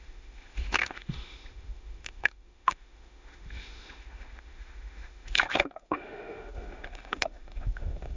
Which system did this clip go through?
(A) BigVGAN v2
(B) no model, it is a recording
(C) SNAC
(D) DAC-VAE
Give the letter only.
D